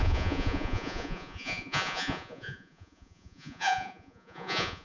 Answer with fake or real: fake